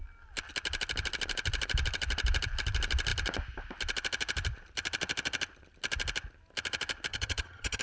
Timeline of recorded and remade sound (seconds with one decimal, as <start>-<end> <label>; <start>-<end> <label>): 0.0-7.1 recorded; 7.1-7.8 remade